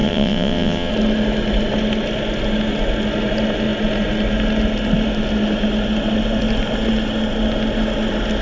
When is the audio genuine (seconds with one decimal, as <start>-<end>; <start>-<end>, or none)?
0.9-8.4